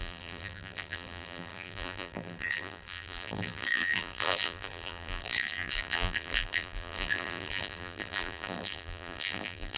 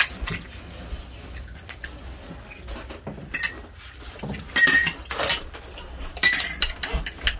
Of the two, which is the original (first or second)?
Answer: second